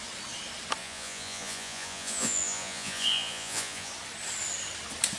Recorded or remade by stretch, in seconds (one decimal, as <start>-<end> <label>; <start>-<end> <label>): 0.0-0.8 recorded; 0.8-3.9 remade; 3.9-5.2 recorded